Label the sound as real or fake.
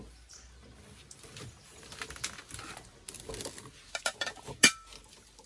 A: real